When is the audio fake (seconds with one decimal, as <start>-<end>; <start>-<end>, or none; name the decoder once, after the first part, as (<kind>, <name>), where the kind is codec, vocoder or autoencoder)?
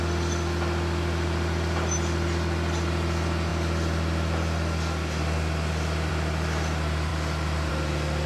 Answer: none